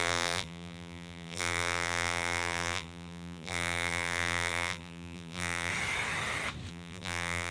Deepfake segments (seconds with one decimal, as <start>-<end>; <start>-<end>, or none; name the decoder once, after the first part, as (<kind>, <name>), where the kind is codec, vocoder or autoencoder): 0.0-5.7 (vocoder, BigVGAN v2); 6.7-7.5